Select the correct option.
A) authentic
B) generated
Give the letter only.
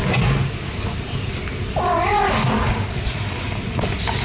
A